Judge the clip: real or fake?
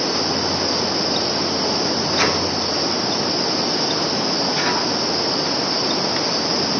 real